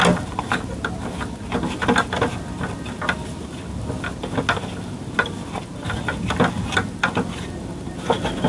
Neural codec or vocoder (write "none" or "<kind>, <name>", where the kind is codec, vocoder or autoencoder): none